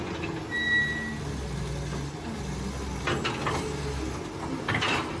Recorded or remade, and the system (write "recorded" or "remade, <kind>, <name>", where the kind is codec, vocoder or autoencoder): recorded